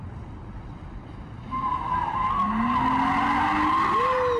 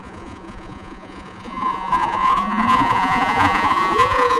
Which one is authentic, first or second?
first